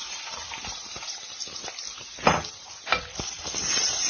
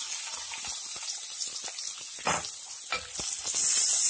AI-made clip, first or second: first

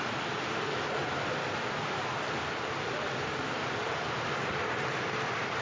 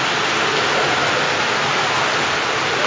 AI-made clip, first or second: first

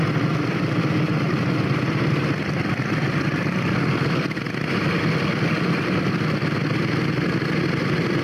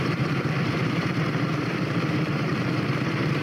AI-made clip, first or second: second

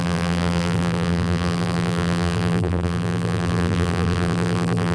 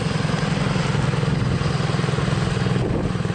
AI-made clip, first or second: first